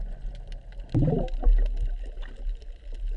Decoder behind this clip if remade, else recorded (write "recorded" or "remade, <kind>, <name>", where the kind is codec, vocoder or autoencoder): recorded